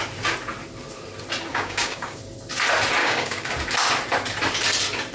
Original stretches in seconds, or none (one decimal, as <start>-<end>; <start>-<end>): 0.0-1.5; 2.2-3.0; 3.5-5.1